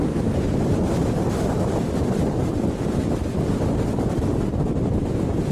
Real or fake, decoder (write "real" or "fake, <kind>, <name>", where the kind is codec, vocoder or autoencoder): fake, vocoder, BigVGAN v2